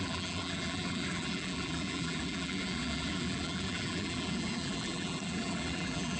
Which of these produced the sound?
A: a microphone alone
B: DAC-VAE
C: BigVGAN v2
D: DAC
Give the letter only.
C